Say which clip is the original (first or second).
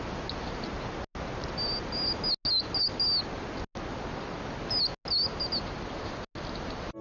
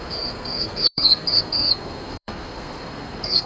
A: first